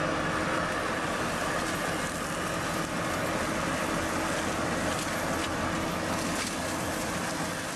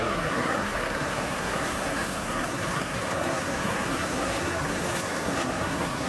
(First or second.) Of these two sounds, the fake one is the second